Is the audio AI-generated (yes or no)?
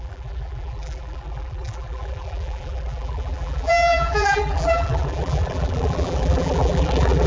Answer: yes